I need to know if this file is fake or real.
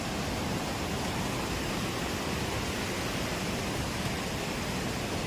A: real